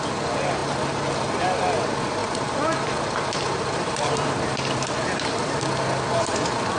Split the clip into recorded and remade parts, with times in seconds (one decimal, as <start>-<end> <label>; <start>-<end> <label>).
0.0-2.2 recorded; 2.2-5.6 remade; 5.6-6.8 recorded